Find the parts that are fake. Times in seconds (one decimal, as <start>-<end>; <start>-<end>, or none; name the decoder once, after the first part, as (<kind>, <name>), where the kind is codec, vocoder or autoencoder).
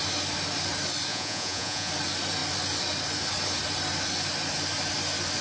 1.1-1.9 (vocoder, Vocos)